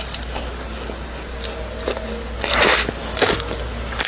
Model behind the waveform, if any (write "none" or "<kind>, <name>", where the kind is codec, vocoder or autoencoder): none